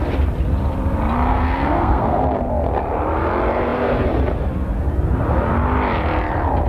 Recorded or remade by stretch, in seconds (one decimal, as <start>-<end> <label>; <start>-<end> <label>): 0.0-1.3 recorded; 1.3-2.5 remade; 2.5-6.7 recorded